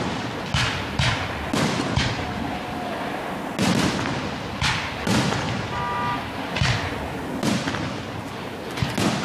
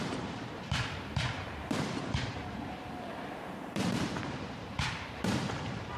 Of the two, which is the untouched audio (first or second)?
first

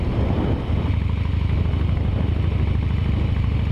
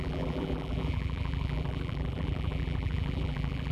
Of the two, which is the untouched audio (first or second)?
first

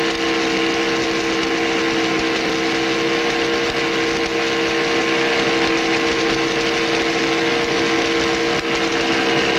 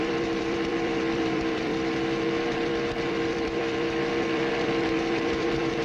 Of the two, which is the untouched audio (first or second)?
first